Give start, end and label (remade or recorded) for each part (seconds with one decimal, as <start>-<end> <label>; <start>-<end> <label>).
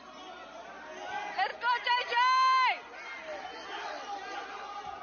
0.0-5.0 recorded